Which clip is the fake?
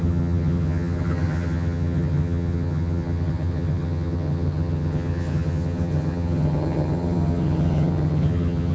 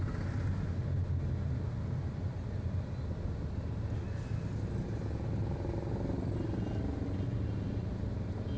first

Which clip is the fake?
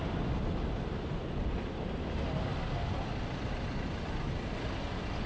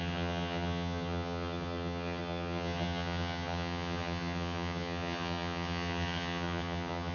second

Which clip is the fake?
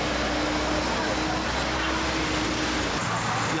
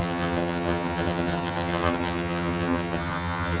second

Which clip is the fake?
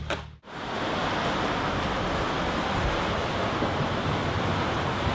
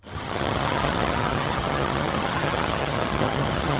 second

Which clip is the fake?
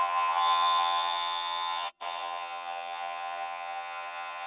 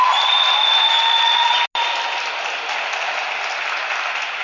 first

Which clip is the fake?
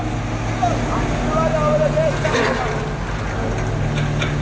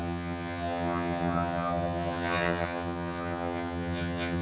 second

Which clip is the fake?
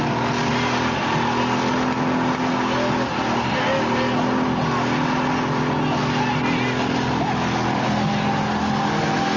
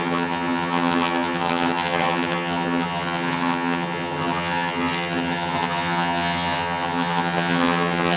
second